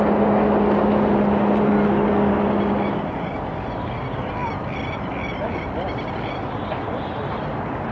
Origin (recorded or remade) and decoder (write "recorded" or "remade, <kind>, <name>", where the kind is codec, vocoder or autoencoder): recorded